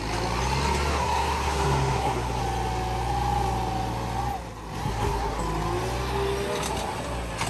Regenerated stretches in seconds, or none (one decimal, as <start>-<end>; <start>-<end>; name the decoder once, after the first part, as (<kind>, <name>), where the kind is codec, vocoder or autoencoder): 0.9-2.4 (codec, SNAC); 4.8-5.4

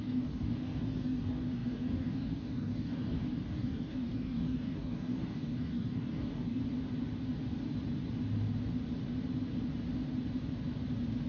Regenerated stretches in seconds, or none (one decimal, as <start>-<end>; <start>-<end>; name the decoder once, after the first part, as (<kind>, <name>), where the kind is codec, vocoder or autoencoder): 0.0-6.6 (codec, DAC)

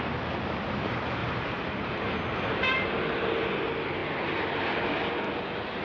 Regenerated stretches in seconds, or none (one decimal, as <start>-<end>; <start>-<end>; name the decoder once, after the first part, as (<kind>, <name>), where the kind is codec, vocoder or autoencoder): 1.2-2.1 (vocoder, BigVGAN v2)

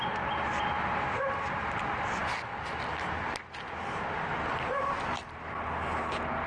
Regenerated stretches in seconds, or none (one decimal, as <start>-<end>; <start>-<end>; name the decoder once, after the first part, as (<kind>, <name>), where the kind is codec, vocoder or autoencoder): none

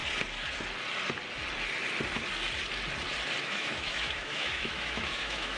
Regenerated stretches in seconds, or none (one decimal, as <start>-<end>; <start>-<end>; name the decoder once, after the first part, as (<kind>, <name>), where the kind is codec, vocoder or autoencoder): 3.4-5.6 (autoencoder, DAC-VAE)